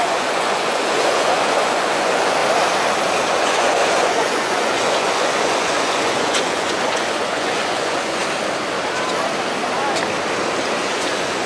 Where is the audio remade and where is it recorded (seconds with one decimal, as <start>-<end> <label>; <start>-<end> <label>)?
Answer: 0.0-2.4 remade; 2.4-3.3 recorded; 3.3-8.2 remade; 8.2-10.8 recorded; 10.8-11.5 remade